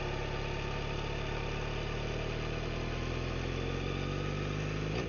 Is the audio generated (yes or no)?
no